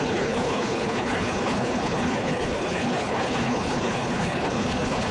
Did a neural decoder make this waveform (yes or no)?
yes